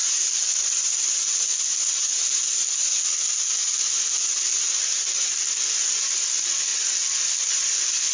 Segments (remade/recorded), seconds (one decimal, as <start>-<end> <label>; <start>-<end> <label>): 0.0-8.1 recorded